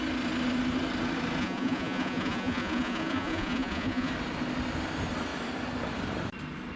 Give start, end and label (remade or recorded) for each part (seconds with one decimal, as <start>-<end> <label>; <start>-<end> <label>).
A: 0.0-1.4 recorded; 1.4-4.1 remade; 4.1-6.8 recorded